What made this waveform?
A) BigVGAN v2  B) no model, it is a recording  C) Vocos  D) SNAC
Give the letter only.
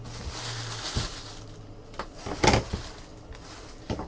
B